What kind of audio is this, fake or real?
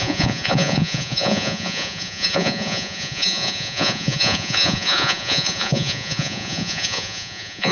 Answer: fake